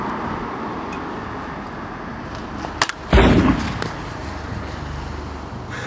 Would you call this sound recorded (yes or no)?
yes